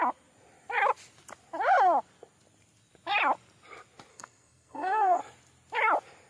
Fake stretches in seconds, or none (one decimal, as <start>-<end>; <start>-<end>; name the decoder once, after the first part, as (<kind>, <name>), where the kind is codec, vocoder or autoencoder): 4.1-5.2 (codec, SNAC)